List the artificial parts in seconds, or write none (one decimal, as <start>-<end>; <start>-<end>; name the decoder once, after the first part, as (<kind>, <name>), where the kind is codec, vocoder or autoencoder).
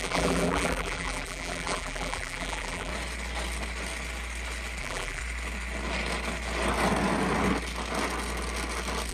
0.0-2.9 (vocoder, BigVGAN v2); 4.8-5.2